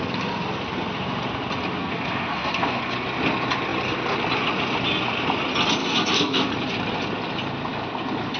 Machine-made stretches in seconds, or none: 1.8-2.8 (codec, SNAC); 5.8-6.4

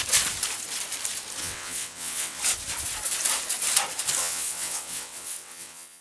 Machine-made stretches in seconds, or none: 1.4-2.4 (vocoder, WaveNeXt); 4.2-6.0